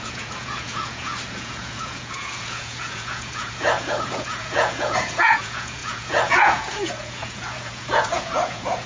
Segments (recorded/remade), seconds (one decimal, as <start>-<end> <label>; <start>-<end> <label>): 0.0-8.9 remade